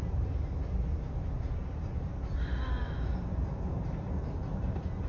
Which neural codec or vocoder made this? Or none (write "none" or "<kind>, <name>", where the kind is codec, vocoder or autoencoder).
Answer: none